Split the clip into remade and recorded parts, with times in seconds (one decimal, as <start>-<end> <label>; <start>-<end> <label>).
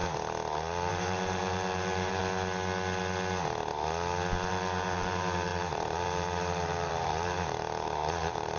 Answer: 0.0-0.9 recorded; 0.9-2.2 remade; 2.2-4.5 recorded; 4.5-8.6 remade